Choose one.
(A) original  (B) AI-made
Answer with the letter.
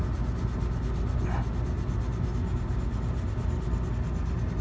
A